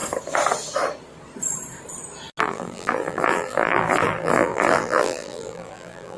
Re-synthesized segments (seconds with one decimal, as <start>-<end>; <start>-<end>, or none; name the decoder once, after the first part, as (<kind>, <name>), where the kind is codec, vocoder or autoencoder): 2.4-6.2 (vocoder, BigVGAN v2)